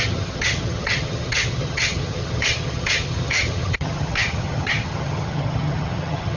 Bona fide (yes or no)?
no